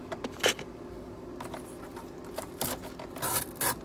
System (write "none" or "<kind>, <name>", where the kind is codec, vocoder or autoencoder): none